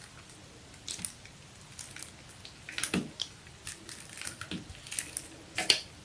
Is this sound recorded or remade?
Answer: recorded